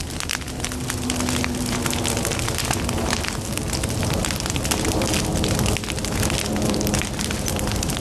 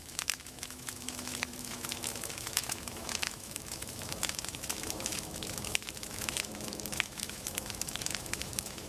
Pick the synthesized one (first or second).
second